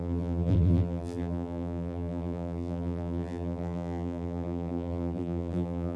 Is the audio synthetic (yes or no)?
yes